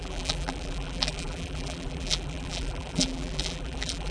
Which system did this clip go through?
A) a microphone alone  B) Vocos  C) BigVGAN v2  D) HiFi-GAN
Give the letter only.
C